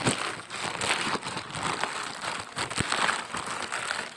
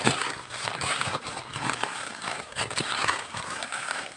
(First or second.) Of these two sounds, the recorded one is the first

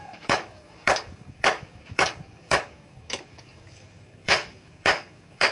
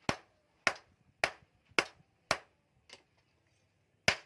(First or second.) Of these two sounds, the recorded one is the second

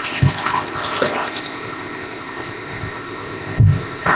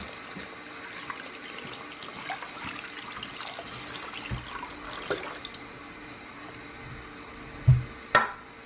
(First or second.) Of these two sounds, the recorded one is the second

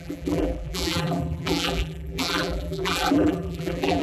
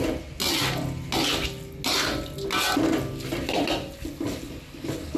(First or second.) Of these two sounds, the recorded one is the second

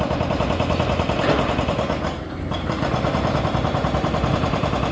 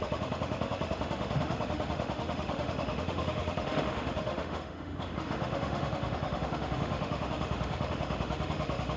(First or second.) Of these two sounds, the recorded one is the first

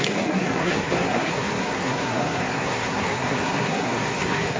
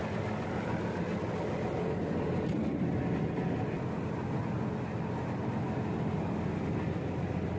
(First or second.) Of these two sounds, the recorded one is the second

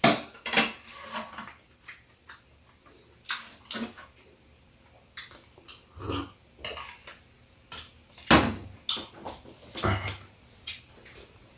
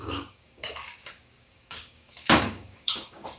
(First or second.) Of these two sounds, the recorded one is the first